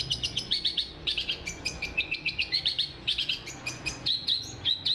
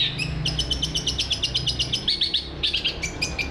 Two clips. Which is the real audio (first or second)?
second